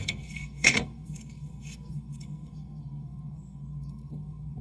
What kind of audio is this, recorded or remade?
remade